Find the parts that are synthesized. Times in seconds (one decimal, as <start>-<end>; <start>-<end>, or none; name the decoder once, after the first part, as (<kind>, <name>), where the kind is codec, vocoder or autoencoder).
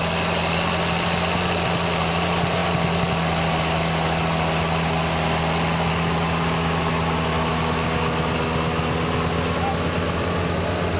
none